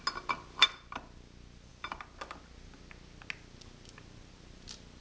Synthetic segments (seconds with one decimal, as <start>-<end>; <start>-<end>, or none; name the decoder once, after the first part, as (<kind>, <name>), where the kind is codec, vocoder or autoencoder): none